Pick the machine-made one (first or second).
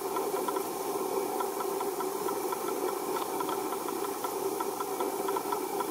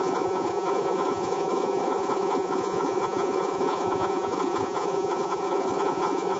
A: second